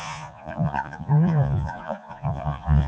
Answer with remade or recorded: remade